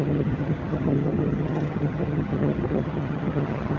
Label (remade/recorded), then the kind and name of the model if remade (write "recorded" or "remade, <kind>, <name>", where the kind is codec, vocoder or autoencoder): remade, vocoder, HiFi-GAN